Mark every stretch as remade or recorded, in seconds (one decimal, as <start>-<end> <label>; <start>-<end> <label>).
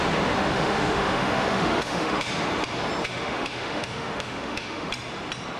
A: 0.0-0.5 recorded; 0.5-2.3 remade; 2.3-3.0 recorded; 3.0-4.9 remade; 4.9-5.6 recorded